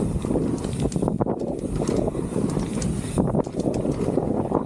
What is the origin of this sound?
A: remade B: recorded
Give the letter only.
B